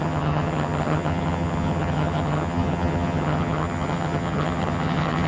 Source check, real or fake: fake